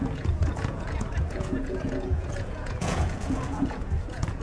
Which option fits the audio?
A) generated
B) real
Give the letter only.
A